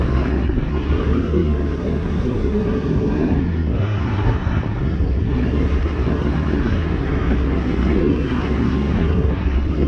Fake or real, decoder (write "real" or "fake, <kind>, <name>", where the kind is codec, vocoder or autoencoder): fake, codec, SNAC